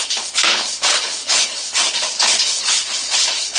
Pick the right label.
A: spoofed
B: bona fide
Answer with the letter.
A